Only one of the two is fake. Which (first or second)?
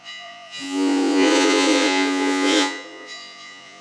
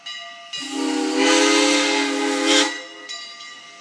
first